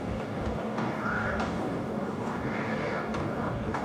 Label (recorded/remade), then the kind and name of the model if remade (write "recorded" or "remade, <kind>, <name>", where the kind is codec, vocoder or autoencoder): remade, codec, DAC